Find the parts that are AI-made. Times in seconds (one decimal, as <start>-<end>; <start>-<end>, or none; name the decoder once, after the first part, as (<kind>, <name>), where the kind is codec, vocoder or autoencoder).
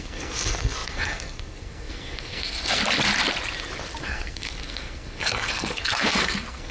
0.0-2.8 (codec, SNAC); 4.0-6.7